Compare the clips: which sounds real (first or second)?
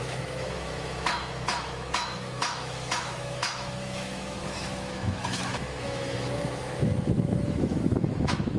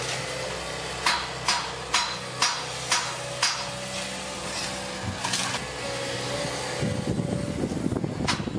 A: second